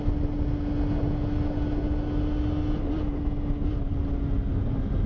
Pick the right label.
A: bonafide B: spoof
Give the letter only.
A